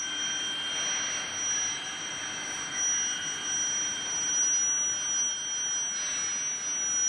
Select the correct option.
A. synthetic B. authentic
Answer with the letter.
B